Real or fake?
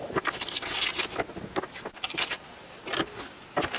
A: real